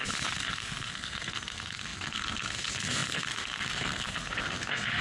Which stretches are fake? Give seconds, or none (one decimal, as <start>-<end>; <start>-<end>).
0.0-5.0